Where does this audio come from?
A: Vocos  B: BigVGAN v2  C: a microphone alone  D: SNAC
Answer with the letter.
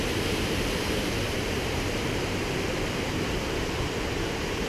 B